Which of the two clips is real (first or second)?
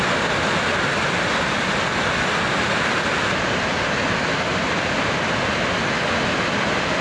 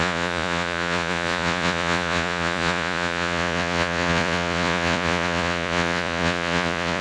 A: first